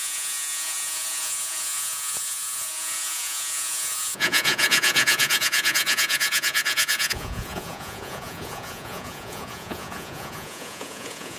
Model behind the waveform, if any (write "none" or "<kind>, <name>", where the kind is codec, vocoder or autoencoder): vocoder, Vocos